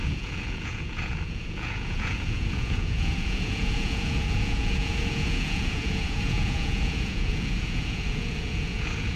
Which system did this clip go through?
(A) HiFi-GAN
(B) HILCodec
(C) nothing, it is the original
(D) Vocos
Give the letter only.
D